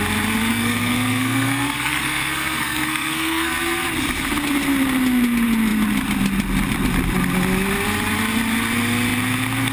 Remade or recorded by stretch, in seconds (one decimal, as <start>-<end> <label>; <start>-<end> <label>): 0.0-0.5 recorded; 0.5-3.5 remade; 3.5-9.7 recorded